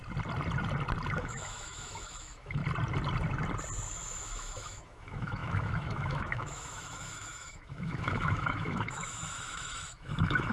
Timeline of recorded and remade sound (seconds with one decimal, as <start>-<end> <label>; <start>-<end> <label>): 0.0-1.2 recorded; 1.2-2.6 remade; 2.6-3.9 recorded; 3.9-10.5 remade